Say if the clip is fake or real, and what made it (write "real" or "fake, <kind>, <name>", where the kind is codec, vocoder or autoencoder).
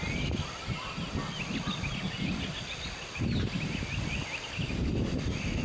real